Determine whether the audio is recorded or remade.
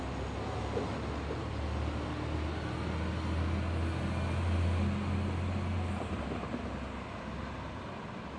recorded